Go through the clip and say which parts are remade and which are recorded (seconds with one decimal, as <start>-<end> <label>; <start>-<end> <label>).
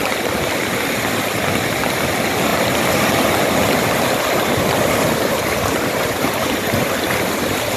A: 0.0-7.8 recorded